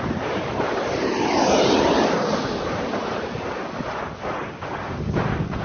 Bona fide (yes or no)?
yes